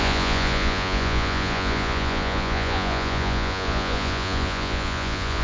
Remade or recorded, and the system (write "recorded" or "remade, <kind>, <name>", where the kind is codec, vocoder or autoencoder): remade, vocoder, Vocos